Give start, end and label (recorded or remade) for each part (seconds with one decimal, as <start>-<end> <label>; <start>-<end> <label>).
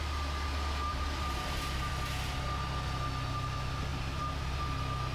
0.0-0.9 recorded; 0.9-1.9 remade; 1.9-3.9 recorded; 3.9-4.6 remade; 4.6-5.1 recorded